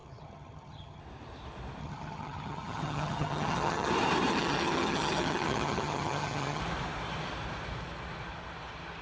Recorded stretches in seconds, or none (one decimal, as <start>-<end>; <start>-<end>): 1.0-1.8; 3.9-4.3; 6.6-9.0